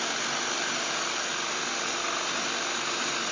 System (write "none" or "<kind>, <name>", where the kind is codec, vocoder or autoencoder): none